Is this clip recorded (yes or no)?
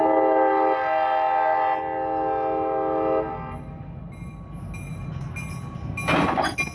yes